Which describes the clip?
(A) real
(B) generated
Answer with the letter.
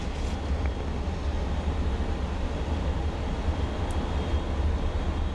A